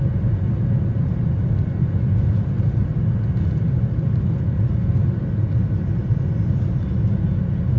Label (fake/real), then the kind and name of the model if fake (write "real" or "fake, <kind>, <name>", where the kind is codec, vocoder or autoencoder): real